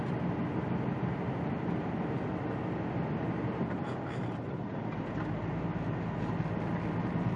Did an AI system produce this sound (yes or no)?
no